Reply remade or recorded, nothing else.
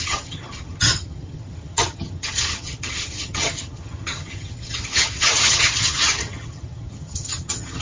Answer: remade